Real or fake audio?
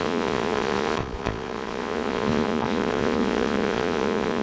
fake